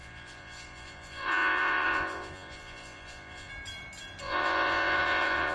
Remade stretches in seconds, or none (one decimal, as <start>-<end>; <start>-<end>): 0.0-3.5; 4.2-5.5